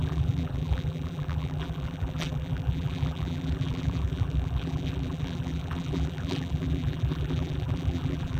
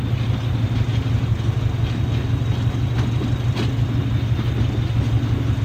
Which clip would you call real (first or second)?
second